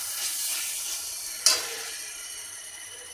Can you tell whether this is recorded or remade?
recorded